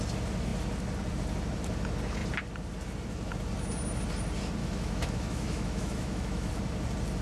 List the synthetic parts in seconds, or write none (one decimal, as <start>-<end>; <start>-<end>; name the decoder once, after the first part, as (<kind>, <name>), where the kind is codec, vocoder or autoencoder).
4.6-6.5 (autoencoder, DAC-VAE)